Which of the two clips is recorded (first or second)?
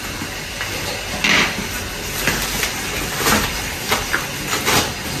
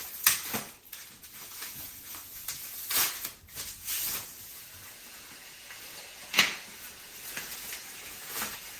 first